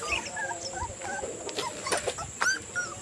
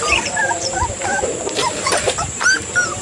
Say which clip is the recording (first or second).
first